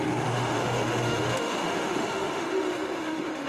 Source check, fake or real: fake